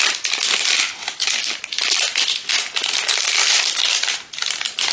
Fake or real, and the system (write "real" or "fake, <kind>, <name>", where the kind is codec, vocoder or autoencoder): real